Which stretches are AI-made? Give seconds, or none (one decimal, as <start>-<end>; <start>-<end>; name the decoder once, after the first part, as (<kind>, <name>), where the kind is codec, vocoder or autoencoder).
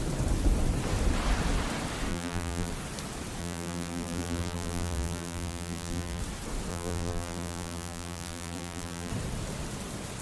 2.1-2.7 (vocoder, BigVGAN v2); 3.4-6.2; 6.7-9.1